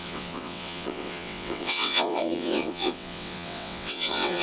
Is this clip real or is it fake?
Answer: fake